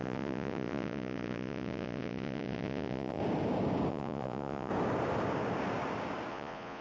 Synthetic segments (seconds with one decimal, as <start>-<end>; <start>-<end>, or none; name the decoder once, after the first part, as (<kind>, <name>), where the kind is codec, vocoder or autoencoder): 0.0-3.2 (vocoder, Vocos); 3.9-4.7; 6.3-6.8